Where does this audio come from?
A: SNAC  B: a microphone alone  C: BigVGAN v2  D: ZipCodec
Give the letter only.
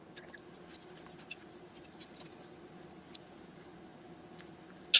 B